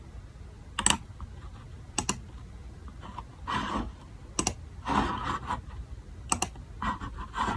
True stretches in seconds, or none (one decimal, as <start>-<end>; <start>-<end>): 0.0-7.6

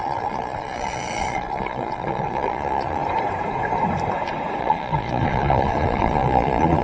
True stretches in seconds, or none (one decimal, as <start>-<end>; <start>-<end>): 3.0-4.6

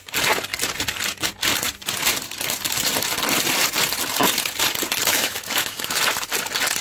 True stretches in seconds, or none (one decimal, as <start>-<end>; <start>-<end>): 0.0-5.1; 6.0-6.8

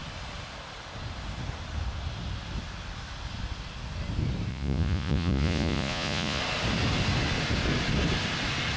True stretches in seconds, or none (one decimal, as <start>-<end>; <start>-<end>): 0.0-4.5; 6.4-8.8

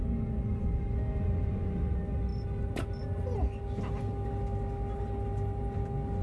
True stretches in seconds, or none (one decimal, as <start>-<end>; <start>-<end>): 0.0-6.2

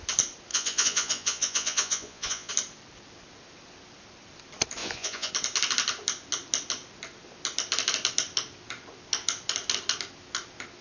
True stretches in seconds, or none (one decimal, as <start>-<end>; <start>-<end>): 0.0-0.5; 2.5-4.8; 5.3-10.8

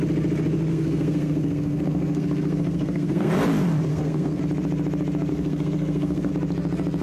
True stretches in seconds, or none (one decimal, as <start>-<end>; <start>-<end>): 0.0-0.7; 3.3-3.9; 4.4-5.3; 6.3-7.0

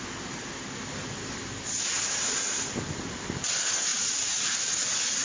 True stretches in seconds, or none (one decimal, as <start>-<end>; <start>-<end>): 0.0-5.2